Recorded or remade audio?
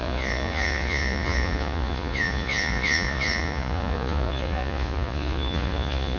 remade